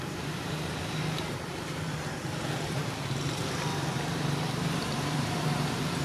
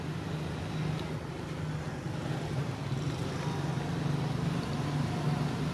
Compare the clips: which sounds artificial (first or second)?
first